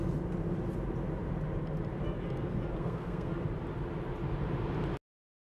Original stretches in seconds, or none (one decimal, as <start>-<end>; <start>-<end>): 0.0-2.8; 3.3-5.4